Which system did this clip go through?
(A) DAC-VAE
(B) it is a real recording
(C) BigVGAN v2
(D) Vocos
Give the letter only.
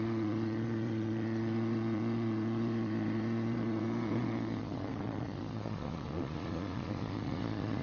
D